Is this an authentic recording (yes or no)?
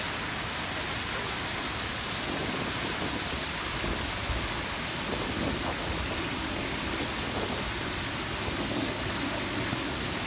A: yes